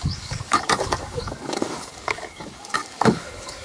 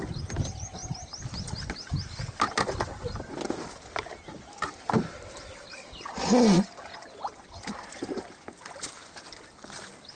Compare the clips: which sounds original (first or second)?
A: second